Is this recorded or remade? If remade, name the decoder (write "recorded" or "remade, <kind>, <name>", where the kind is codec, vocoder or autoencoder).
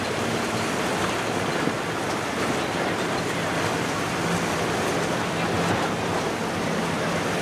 recorded